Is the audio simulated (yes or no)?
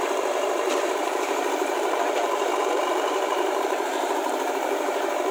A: yes